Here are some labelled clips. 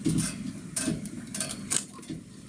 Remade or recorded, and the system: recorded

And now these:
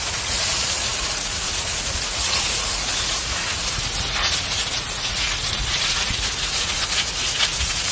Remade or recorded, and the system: remade, vocoder, Vocos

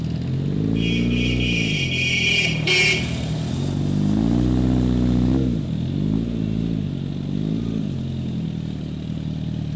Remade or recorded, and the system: recorded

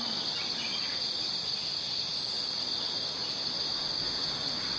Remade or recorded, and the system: recorded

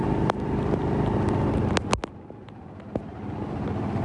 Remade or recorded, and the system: recorded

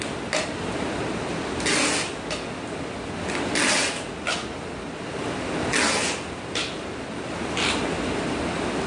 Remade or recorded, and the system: recorded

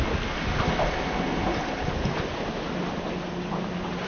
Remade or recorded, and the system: recorded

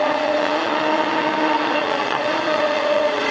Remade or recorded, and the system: remade, vocoder, Vocos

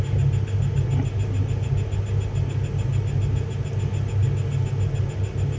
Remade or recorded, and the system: recorded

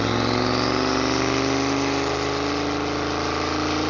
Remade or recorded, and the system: recorded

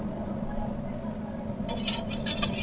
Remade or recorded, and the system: recorded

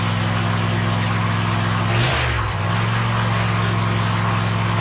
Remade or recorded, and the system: recorded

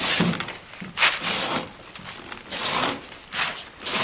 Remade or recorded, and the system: recorded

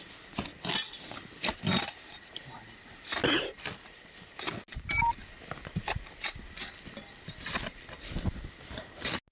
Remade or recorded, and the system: recorded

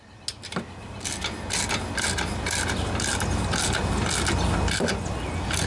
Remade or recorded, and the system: recorded